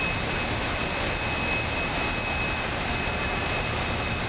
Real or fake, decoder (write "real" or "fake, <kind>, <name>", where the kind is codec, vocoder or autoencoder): real